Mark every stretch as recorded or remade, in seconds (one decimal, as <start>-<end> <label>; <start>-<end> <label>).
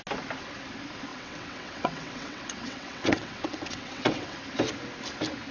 0.0-1.1 recorded; 1.1-4.4 remade; 4.4-5.5 recorded